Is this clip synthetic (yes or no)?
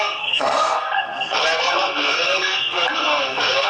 yes